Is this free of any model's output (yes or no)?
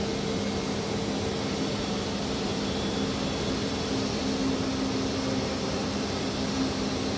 yes